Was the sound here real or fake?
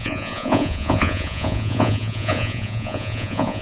fake